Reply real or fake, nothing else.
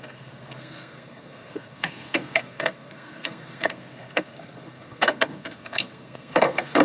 fake